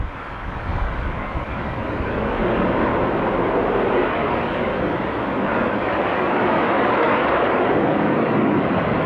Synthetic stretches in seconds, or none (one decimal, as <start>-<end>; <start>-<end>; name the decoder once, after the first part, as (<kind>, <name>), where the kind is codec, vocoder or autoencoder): 0.0-2.9 (codec, DAC); 3.9-9.1